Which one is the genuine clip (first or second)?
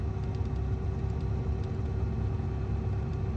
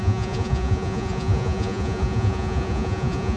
first